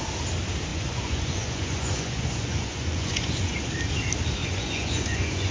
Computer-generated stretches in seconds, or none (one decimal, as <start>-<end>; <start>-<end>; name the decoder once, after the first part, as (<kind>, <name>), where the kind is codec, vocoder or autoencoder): 0.7-3.6 (vocoder, Vocos); 4.4-5.5